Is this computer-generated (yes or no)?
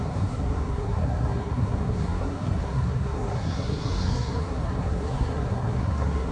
yes